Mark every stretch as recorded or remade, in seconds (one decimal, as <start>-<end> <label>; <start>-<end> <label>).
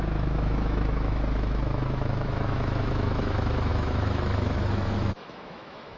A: 0.0-6.0 remade